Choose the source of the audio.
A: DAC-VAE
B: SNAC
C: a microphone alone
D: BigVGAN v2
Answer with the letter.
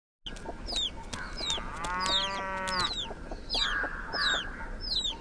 C